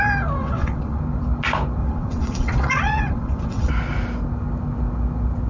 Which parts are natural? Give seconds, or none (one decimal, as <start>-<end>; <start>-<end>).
0.0-0.4; 1.0-1.8; 3.7-5.5